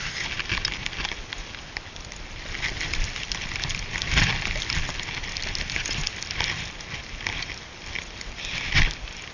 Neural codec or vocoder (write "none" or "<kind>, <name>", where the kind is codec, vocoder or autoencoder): none